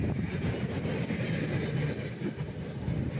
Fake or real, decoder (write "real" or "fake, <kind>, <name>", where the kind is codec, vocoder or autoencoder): real